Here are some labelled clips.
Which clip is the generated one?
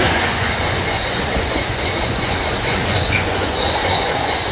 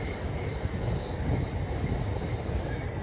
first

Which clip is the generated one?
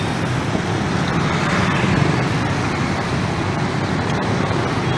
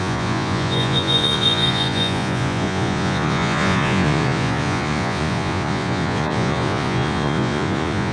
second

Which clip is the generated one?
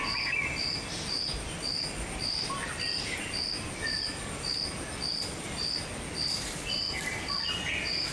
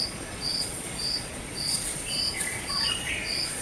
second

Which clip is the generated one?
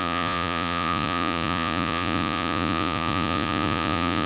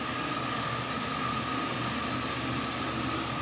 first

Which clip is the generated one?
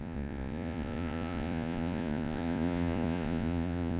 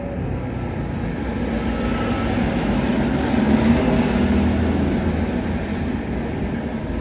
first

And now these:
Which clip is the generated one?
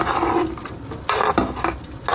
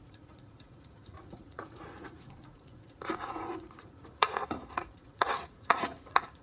second